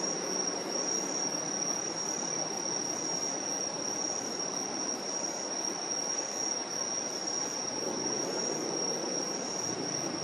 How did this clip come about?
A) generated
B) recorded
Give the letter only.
B